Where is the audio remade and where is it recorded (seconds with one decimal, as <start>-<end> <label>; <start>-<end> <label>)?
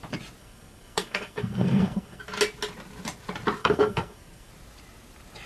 0.0-0.4 recorded; 0.4-2.2 remade; 2.2-3.6 recorded; 3.6-4.5 remade; 4.5-5.5 recorded